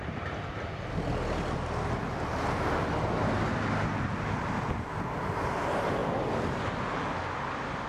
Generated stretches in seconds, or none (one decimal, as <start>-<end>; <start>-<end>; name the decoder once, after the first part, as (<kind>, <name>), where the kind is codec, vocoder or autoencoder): none